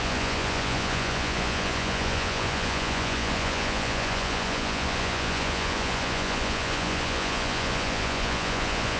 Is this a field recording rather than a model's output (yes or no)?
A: no